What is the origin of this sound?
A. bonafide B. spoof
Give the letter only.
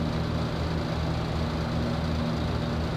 A